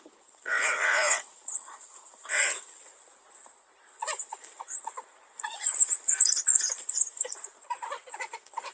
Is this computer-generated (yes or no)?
yes